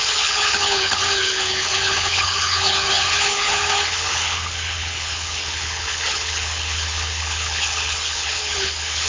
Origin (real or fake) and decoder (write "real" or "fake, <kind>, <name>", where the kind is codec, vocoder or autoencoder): fake, codec, HILCodec